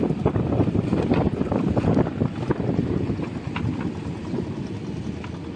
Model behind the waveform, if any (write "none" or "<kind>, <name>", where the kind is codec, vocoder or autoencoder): none